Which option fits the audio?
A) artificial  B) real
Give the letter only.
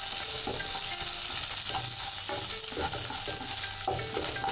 B